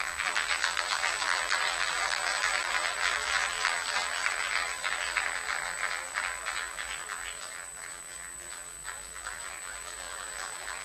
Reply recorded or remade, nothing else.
remade